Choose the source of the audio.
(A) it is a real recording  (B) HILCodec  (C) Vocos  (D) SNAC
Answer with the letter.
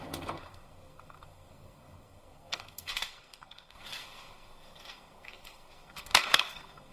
D